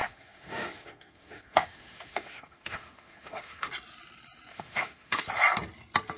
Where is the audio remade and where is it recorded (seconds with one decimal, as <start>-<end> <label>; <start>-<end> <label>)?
0.0-3.7 remade; 3.7-4.5 recorded; 4.5-5.2 remade; 5.2-6.2 recorded